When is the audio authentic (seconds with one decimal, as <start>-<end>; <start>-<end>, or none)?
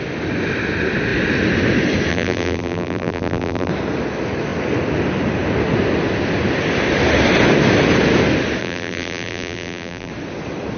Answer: 0.0-2.1; 3.7-8.6; 10.1-10.8